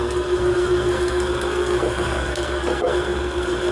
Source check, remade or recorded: remade